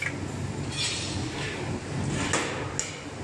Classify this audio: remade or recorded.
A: recorded